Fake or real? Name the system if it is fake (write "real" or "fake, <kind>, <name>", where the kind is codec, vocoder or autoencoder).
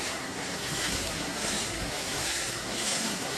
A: fake, codec, SNAC